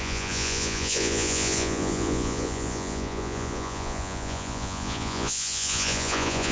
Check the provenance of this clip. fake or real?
fake